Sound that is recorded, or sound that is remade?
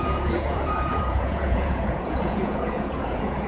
remade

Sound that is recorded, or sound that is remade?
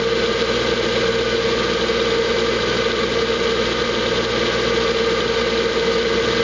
recorded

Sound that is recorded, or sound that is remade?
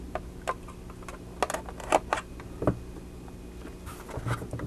recorded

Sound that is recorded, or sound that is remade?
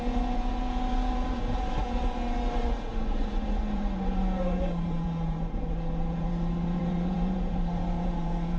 remade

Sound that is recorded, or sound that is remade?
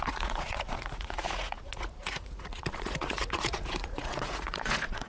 remade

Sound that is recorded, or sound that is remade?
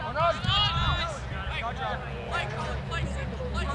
recorded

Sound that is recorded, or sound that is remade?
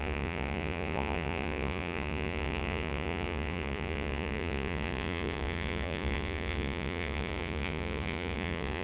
remade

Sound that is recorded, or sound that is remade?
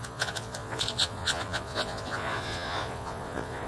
remade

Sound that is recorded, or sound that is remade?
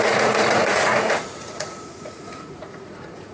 remade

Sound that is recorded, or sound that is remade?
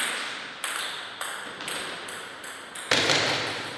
recorded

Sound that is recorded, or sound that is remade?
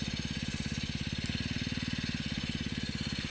recorded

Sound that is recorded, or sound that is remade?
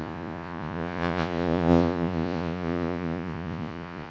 remade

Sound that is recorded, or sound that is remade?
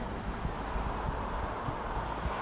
recorded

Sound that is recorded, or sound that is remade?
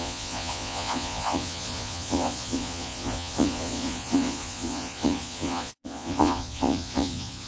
remade